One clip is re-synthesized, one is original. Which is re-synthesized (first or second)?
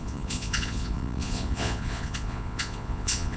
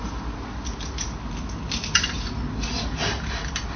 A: first